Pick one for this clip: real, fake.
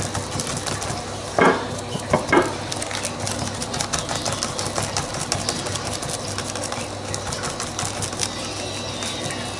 real